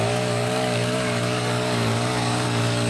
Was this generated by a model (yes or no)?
yes